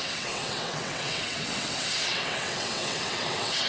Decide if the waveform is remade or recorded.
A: remade